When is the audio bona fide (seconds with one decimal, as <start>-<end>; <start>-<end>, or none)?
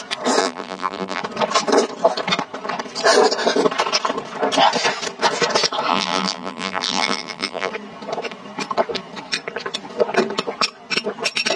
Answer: 0.0-0.4; 1.2-5.9; 7.7-11.6